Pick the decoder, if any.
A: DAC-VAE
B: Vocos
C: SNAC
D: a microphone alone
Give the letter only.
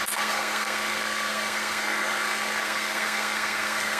C